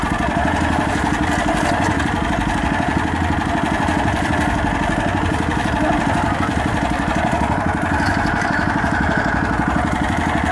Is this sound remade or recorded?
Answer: recorded